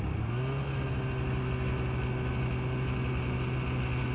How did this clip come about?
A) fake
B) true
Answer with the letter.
B